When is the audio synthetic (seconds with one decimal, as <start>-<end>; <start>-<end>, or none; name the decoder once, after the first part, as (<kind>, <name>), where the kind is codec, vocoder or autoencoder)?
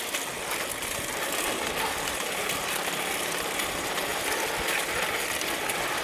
4.1-4.9 (vocoder, BigVGAN v2)